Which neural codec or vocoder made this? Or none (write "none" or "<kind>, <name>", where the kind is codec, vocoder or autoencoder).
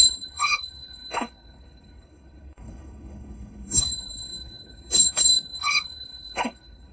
codec, HILCodec